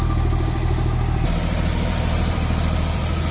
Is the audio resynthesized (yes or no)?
yes